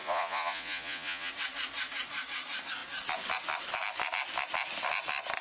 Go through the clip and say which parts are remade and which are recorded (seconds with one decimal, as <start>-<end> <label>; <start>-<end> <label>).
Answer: 0.0-1.3 remade; 1.3-5.4 recorded